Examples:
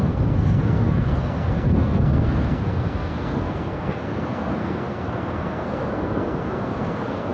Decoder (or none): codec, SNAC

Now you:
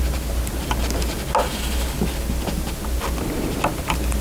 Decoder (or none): none